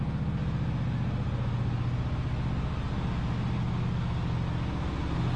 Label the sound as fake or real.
real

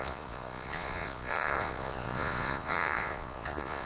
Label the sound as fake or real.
fake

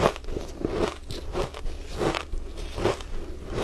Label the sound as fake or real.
real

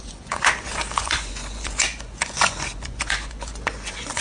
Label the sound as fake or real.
fake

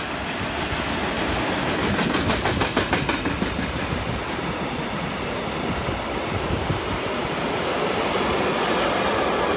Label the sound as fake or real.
real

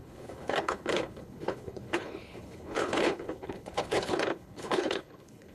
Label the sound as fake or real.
fake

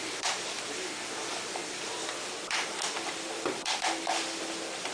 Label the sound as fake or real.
fake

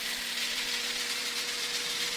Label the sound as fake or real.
fake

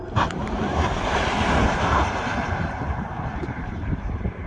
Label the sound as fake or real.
fake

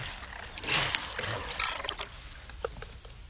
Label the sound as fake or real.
real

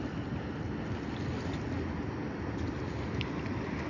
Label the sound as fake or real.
real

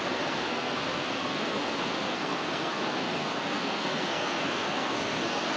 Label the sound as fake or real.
fake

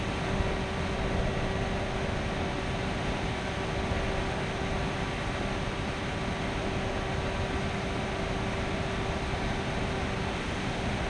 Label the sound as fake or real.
real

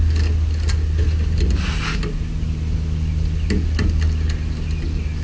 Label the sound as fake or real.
real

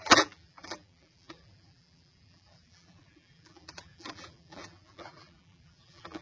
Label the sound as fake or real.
fake